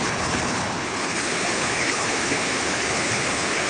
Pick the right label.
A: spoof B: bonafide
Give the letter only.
A